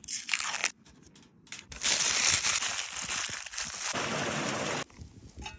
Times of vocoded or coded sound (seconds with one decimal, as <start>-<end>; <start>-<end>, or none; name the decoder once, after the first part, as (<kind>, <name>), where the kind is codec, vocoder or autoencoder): none